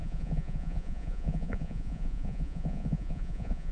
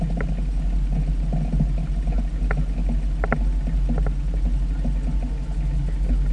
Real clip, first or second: second